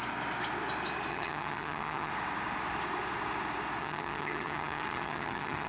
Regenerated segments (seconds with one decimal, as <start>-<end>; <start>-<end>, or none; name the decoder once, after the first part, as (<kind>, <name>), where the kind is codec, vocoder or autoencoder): 1.1-2.1 (vocoder, HiFi-GAN); 3.8-5.7